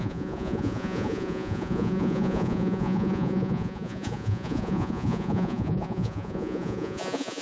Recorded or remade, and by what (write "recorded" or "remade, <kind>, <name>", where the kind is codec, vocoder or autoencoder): remade, vocoder, Vocos